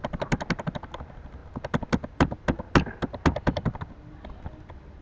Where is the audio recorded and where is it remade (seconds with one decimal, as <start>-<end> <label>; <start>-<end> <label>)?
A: 0.0-5.0 recorded